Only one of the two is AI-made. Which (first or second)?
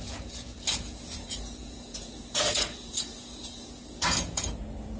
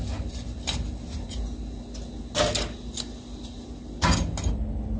first